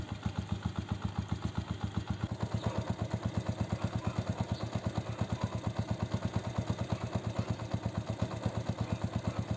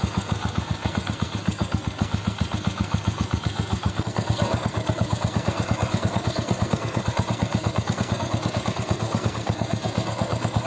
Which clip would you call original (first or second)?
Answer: first